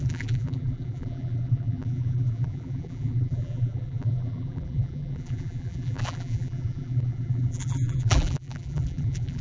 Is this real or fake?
fake